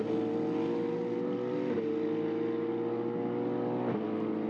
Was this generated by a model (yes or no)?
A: no